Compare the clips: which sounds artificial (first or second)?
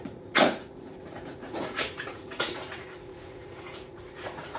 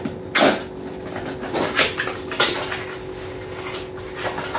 first